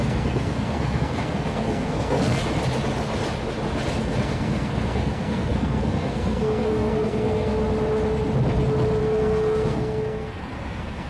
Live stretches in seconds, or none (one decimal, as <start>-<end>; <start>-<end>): 2.4-4.0; 7.5-9.0